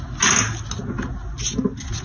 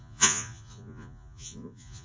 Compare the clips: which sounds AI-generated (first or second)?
second